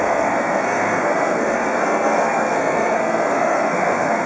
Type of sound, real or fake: fake